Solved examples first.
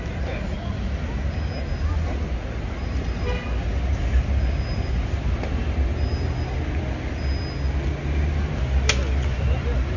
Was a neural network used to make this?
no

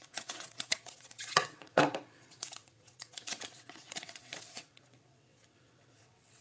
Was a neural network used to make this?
yes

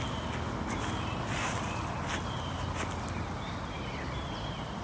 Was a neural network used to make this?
no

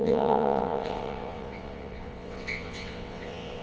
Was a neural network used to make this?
yes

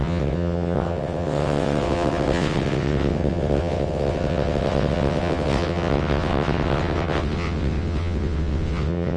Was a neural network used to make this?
yes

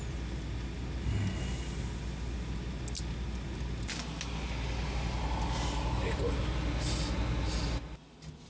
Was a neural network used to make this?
no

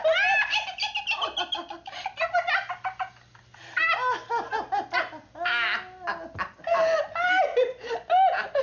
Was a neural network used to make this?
no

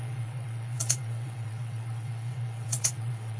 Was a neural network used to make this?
yes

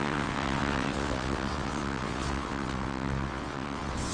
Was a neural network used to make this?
yes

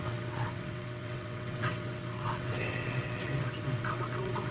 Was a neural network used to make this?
yes